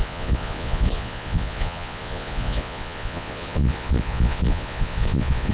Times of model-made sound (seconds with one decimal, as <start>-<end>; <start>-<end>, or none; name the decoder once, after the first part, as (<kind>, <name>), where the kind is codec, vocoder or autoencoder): 0.0-5.5 (vocoder, Vocos)